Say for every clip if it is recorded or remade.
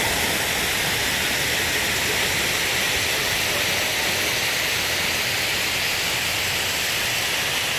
recorded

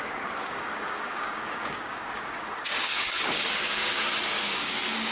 remade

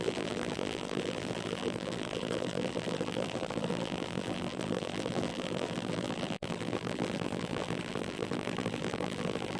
remade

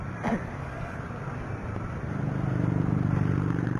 remade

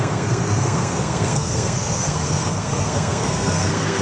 remade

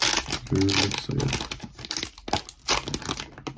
recorded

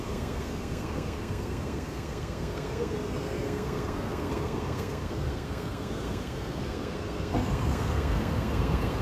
remade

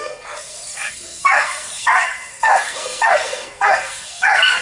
remade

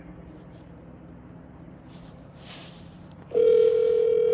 remade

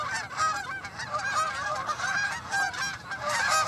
remade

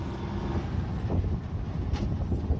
recorded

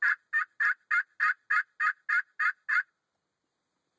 recorded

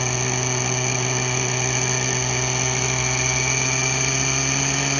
recorded